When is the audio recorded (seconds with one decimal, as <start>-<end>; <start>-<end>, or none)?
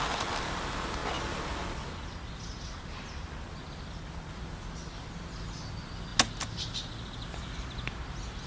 0.0-8.5